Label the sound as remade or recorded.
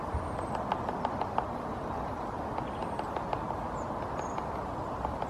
recorded